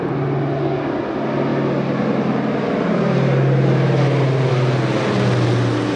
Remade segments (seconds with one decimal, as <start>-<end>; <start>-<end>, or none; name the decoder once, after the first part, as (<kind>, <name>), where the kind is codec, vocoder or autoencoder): none